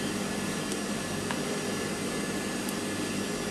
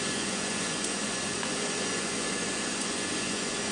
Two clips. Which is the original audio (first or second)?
first